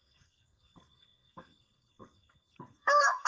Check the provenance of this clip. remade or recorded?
remade